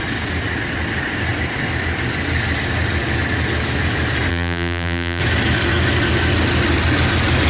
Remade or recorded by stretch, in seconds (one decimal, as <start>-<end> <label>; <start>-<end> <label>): 0.0-4.3 recorded; 4.3-5.2 remade; 5.2-7.5 recorded